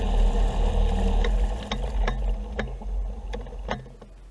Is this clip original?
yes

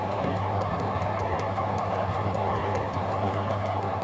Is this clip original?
no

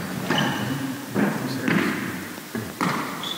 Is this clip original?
yes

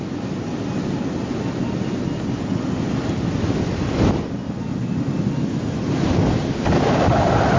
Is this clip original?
yes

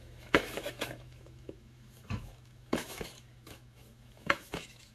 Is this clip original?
no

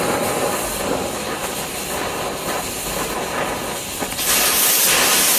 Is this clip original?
yes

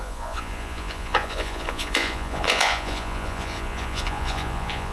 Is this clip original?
no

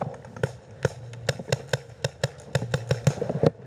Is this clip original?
yes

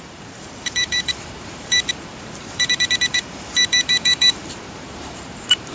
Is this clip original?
no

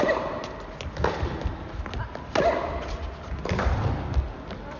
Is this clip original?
yes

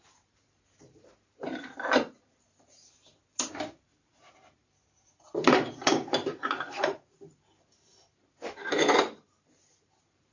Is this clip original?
no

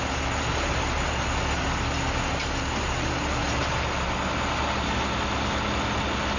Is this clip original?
yes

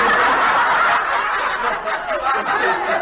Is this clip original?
yes